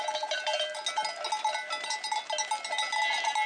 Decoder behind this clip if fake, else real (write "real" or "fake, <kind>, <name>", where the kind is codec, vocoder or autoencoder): real